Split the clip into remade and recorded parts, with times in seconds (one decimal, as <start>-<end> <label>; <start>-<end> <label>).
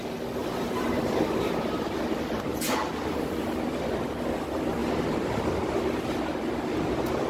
0.0-0.4 recorded; 0.4-1.0 remade; 1.0-7.3 recorded